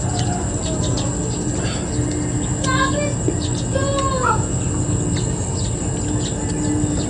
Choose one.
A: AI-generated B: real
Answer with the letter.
B